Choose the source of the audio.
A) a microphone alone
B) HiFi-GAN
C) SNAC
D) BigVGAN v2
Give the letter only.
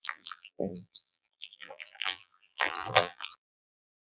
D